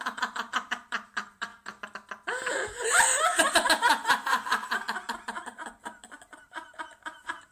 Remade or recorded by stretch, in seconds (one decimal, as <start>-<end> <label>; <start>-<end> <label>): 0.0-1.5 remade; 1.5-2.7 recorded; 2.7-7.5 remade